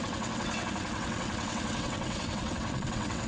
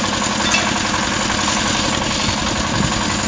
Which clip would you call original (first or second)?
second